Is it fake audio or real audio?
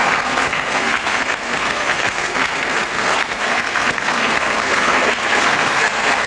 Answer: fake